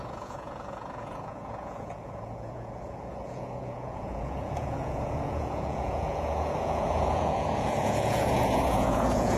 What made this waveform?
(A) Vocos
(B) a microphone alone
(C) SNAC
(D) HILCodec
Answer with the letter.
A